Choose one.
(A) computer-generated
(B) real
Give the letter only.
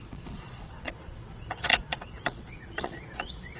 A